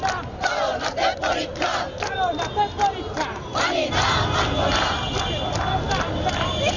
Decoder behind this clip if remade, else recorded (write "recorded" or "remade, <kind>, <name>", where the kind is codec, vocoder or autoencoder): recorded